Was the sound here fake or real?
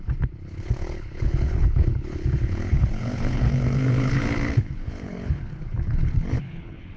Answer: fake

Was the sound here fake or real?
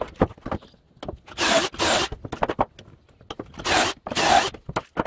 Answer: real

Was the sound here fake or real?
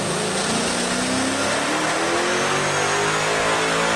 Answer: real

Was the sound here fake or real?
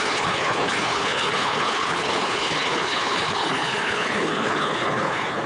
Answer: fake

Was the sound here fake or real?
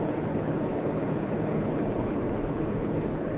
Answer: fake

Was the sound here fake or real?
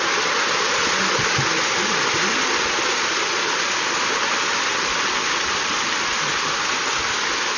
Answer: real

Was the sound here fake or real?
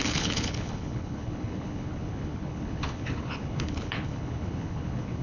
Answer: fake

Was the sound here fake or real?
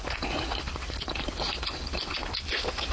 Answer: real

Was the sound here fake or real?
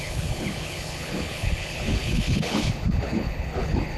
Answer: fake